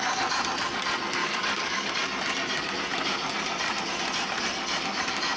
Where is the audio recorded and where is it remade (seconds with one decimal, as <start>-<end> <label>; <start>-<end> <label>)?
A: 0.0-1.2 recorded; 1.2-1.9 remade; 1.9-5.4 recorded